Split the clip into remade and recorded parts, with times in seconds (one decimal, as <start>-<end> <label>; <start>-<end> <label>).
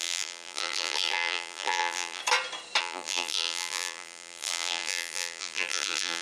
0.0-2.2 remade; 2.2-2.8 recorded; 2.8-6.2 remade